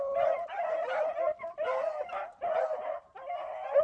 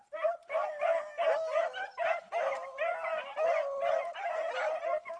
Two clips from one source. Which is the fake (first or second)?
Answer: first